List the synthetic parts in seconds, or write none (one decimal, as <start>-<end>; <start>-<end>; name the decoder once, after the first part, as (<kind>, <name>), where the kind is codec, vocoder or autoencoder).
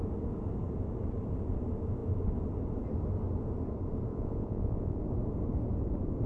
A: 4.1-5.0 (vocoder, Vocos)